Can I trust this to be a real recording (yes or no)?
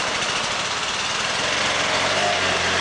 yes